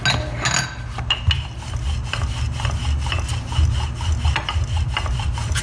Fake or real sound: real